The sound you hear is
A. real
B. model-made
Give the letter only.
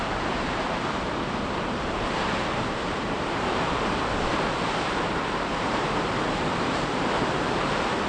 B